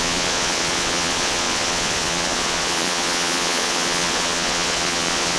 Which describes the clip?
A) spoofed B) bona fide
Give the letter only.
A